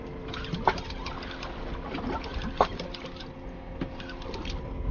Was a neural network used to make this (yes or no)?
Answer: no